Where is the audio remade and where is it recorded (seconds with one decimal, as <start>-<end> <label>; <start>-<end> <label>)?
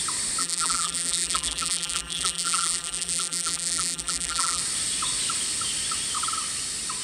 0.0-0.4 recorded; 0.4-4.6 remade; 4.6-7.0 recorded